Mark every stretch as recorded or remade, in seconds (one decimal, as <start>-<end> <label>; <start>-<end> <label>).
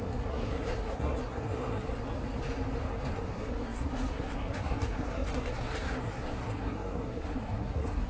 0.0-1.9 remade; 1.9-3.1 recorded; 3.1-8.1 remade